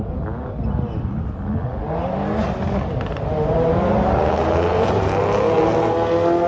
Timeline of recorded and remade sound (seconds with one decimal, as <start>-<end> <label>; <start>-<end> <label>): 0.0-3.1 recorded; 3.1-5.1 remade; 5.1-6.5 recorded

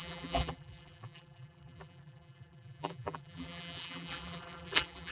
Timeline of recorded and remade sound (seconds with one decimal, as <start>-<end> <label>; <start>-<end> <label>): 0.0-5.1 remade

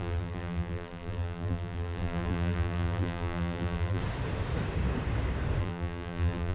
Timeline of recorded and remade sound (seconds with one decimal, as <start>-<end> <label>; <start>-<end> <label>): 0.0-4.0 remade; 4.0-5.6 recorded; 5.6-6.5 remade

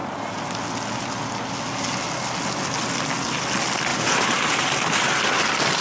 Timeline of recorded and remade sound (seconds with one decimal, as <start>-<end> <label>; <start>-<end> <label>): 0.0-3.9 recorded; 3.9-4.6 remade; 4.6-5.8 recorded

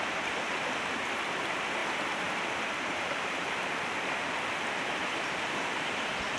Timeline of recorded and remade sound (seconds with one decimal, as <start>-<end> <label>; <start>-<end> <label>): 0.0-6.4 remade

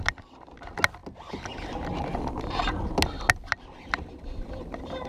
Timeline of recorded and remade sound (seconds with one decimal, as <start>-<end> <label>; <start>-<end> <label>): 0.0-5.1 recorded

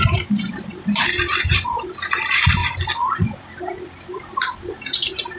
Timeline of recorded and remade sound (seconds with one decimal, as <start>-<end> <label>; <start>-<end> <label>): 0.0-2.6 remade; 2.6-4.4 recorded; 4.4-5.4 remade

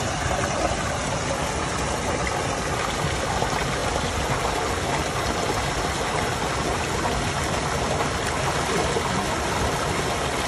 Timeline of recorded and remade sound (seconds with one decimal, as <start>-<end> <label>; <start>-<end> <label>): 0.0-10.5 recorded